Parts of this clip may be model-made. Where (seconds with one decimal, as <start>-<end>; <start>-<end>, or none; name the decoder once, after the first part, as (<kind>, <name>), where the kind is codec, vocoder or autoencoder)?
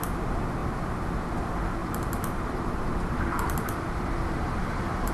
0.6-1.1 (vocoder, BigVGAN v2); 1.8-5.1